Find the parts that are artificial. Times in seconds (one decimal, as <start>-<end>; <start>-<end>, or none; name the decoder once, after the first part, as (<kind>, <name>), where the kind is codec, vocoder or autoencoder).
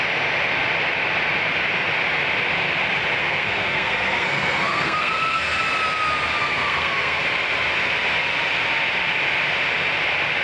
3.2-5.6 (codec, SNAC); 6.4-7.2